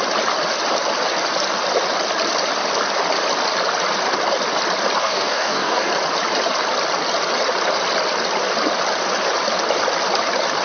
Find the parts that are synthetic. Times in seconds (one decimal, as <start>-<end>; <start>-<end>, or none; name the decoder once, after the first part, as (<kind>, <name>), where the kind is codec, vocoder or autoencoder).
5.0-5.9 (codec, DAC)